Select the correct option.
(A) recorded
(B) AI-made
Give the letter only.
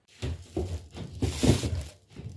A